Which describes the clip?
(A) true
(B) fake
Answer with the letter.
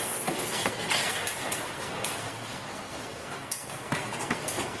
B